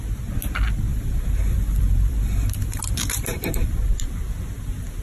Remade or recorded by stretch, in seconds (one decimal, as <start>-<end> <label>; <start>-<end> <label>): 0.0-0.9 recorded; 0.9-3.9 remade; 3.9-5.0 recorded